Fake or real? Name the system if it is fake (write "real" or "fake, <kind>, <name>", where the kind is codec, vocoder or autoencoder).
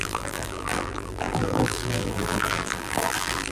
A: fake, vocoder, BigVGAN v2